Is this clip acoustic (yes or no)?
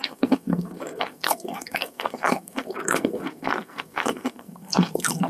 no